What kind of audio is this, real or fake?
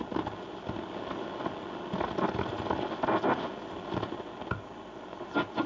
real